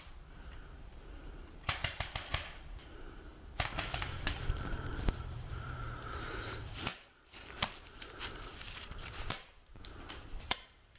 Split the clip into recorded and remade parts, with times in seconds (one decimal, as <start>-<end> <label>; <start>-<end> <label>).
0.0-3.3 remade; 3.3-3.8 recorded; 3.8-11.0 remade